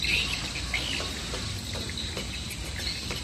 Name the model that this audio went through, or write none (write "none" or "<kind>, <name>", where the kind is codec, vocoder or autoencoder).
none